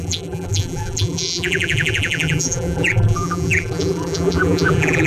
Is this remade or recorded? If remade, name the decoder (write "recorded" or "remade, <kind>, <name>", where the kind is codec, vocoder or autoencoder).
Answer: remade, vocoder, BigVGAN v2